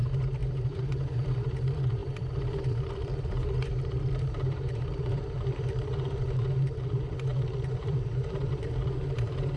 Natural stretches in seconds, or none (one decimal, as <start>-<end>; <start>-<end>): none